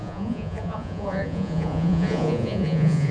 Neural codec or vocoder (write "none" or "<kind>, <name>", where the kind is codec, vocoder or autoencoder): vocoder, Vocos